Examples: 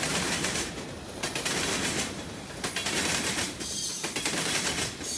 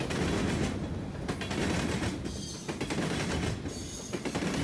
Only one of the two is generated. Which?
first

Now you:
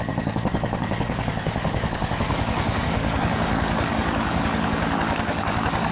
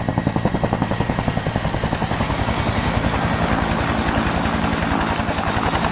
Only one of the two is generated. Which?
first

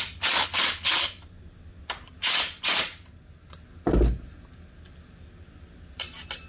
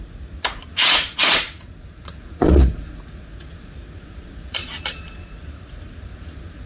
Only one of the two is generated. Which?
second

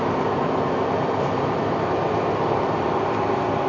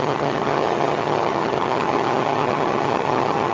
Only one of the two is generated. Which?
second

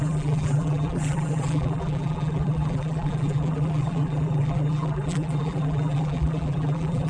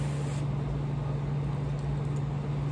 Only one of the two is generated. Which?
first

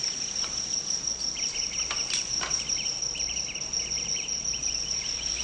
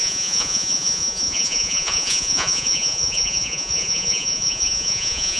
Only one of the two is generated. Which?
second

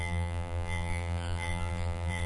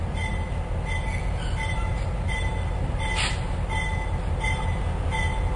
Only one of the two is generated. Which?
first